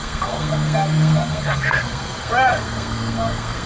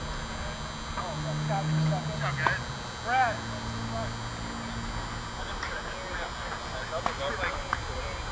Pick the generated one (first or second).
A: first